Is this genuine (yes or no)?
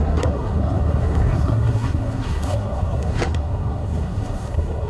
no